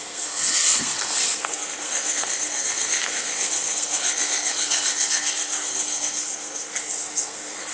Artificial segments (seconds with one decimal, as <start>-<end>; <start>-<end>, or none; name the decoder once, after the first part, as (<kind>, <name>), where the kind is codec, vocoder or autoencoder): 0.0-7.7 (codec, SNAC)